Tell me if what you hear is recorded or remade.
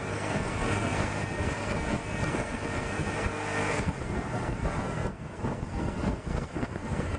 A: remade